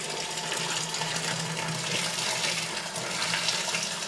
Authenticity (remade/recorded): recorded